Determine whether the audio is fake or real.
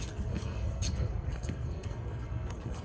fake